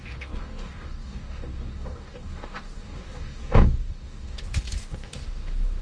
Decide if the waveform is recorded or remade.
remade